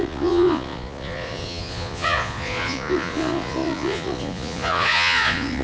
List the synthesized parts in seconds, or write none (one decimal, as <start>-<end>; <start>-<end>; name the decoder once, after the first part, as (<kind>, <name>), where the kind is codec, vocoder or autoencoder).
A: 0.0-5.6 (vocoder, Vocos)